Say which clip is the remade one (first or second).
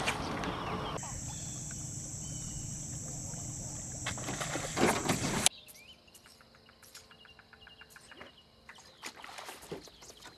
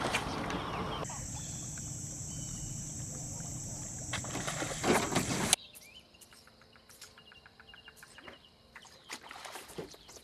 second